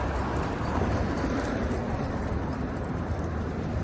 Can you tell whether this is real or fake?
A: fake